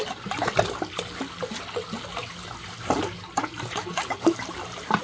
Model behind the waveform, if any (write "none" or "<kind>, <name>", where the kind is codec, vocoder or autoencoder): none